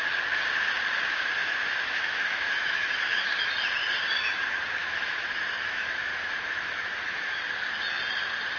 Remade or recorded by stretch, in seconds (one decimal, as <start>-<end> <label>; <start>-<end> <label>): 0.0-1.4 recorded; 1.4-3.5 remade; 3.5-4.8 recorded; 4.8-7.4 remade; 7.4-8.6 recorded